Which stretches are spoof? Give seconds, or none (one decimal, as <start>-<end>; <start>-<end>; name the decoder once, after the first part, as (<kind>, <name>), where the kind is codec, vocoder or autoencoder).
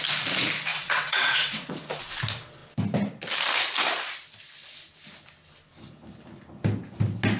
0.7-1.7 (vocoder, WaveNeXt)